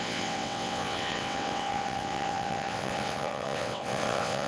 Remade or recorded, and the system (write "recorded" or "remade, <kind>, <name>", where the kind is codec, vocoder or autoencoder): remade, vocoder, WaveNeXt